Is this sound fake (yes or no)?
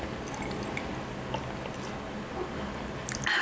no